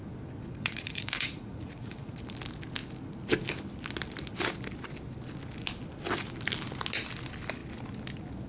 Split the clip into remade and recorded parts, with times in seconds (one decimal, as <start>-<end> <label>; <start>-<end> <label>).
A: 0.0-0.5 recorded; 0.5-2.2 remade; 2.2-8.5 recorded

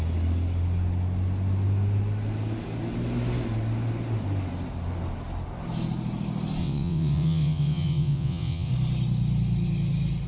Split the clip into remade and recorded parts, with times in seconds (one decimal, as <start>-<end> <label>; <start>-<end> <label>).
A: 0.0-6.6 recorded; 6.6-8.7 remade; 8.7-10.3 recorded

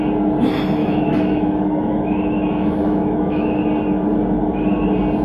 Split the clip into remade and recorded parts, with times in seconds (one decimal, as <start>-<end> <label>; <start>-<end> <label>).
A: 0.0-0.8 recorded; 0.8-3.6 remade; 3.6-5.2 recorded

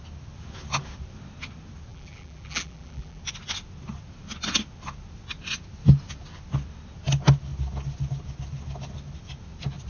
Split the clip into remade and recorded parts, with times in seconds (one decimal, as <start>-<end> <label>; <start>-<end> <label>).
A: 0.0-1.9 recorded; 1.9-3.2 remade; 3.2-9.9 recorded

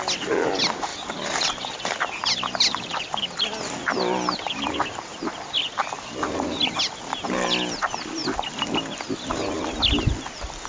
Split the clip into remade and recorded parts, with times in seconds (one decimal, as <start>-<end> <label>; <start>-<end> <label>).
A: 0.0-10.7 recorded

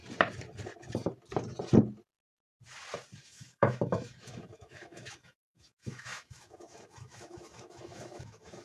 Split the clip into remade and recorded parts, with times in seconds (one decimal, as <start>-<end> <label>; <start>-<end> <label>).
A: 0.0-3.2 recorded; 3.2-8.6 remade